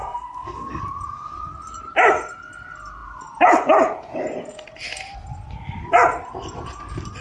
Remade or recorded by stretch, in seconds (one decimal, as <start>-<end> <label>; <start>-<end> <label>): 0.0-0.8 remade; 0.8-7.2 recorded